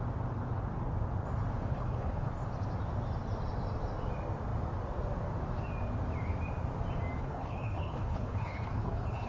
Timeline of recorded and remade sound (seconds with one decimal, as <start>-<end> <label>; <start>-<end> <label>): 0.0-1.7 recorded; 1.7-2.3 remade; 2.3-7.2 recorded; 7.2-9.3 remade